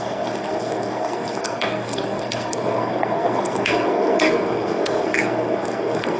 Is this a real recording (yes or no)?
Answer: no